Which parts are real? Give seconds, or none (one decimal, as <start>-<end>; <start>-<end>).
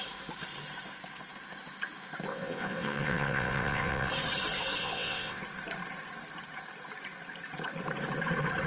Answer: 0.0-2.3; 4.1-4.8; 5.4-8.7